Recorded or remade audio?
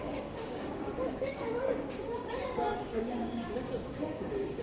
remade